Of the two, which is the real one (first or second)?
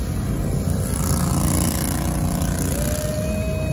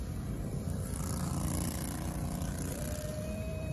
first